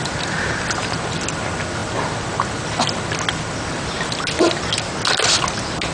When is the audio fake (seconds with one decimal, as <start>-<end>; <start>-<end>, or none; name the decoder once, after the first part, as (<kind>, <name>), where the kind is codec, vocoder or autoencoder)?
none